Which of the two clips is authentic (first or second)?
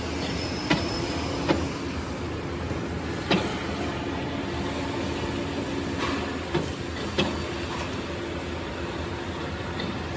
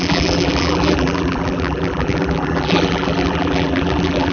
first